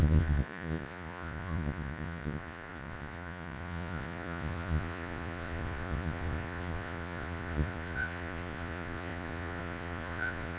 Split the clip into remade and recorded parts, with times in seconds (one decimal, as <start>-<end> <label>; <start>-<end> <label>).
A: 0.0-10.6 remade

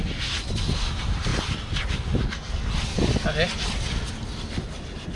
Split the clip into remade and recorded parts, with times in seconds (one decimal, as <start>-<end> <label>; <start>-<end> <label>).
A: 0.0-5.2 recorded